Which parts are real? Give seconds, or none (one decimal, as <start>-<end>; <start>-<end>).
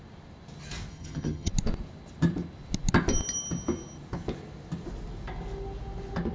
0.0-0.9; 1.5-6.3